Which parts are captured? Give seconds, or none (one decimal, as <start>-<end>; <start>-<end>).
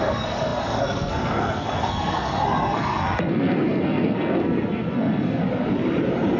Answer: 5.4-6.4